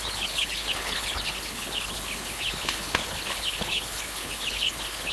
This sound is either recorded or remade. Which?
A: remade